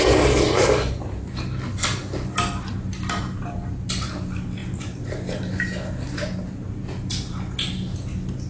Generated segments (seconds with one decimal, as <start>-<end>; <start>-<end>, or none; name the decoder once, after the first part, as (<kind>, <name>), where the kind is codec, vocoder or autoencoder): none